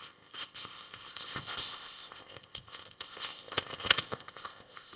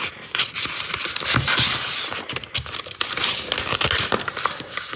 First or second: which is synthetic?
first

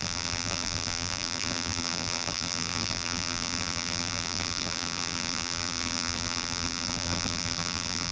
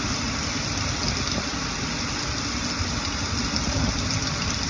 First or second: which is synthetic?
first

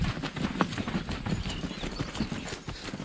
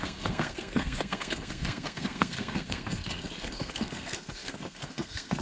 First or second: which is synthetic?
second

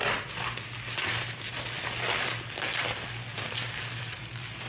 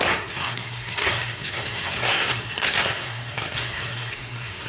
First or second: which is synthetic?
second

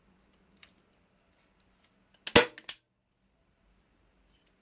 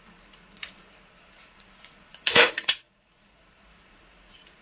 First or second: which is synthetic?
second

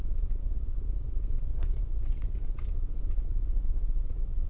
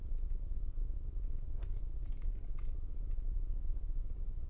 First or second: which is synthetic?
first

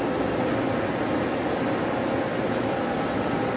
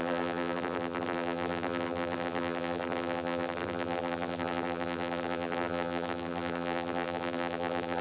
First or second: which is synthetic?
second